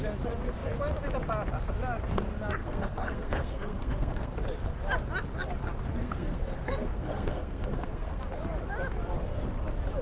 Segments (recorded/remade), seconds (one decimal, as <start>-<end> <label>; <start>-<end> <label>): 0.0-2.6 recorded; 2.6-4.3 remade; 4.3-6.0 recorded; 6.0-8.2 remade; 8.2-10.0 recorded